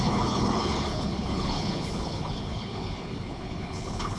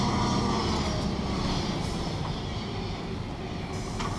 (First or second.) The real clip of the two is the second